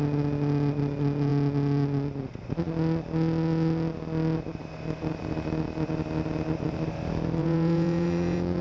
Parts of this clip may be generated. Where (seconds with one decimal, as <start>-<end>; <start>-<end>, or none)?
7.4-8.6